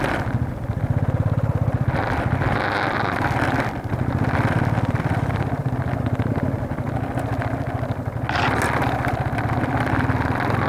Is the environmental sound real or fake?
real